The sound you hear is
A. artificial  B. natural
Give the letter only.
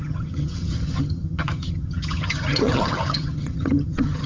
A